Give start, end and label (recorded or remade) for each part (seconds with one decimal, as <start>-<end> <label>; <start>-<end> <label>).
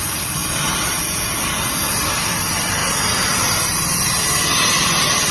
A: 0.0-0.4 recorded; 0.4-1.3 remade; 1.3-5.3 recorded